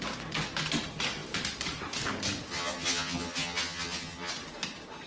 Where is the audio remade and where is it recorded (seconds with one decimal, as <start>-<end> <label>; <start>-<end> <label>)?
0.0-2.5 recorded; 2.5-4.3 remade; 4.3-5.1 recorded